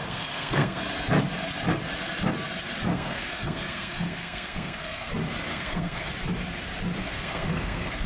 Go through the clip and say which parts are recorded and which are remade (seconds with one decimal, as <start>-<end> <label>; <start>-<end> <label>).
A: 0.0-0.8 remade; 0.8-2.9 recorded; 2.9-5.1 remade; 5.1-5.5 recorded; 5.5-6.1 remade; 6.1-7.0 recorded; 7.0-8.1 remade